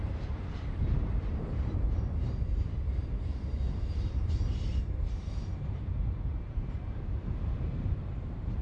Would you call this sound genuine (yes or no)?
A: no